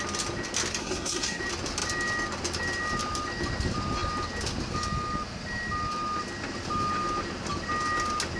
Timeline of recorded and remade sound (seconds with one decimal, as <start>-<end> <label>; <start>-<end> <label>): 0.0-0.8 recorded; 0.8-1.4 remade; 1.4-8.4 recorded